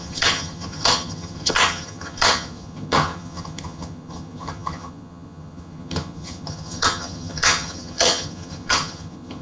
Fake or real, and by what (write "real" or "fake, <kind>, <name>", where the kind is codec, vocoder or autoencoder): fake, vocoder, HiFi-GAN